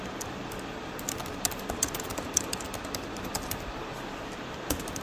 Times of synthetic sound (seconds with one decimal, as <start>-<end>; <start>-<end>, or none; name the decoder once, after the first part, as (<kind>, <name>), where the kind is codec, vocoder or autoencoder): none